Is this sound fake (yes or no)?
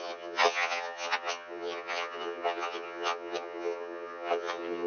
yes